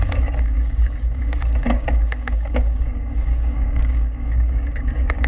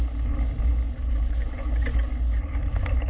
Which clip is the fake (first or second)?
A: first